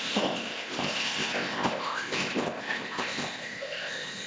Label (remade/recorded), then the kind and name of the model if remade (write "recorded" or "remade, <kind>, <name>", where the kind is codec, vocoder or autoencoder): remade, codec, ZipCodec